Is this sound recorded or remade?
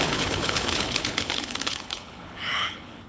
remade